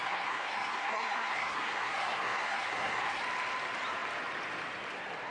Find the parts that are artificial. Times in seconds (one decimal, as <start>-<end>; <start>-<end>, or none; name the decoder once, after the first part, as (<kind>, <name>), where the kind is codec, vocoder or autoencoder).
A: 0.0-3.2 (codec, SNAC)

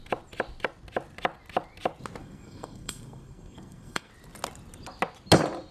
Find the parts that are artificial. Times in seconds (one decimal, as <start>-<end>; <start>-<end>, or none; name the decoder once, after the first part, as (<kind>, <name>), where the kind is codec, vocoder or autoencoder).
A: 2.2-4.1 (codec, SNAC)

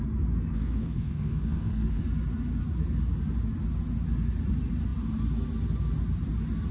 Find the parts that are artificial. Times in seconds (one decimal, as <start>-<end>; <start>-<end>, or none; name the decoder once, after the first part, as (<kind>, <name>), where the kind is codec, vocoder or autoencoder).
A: 0.5-2.0 (codec, SNAC)